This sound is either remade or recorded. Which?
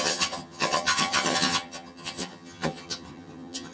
remade